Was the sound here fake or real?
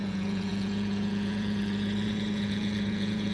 fake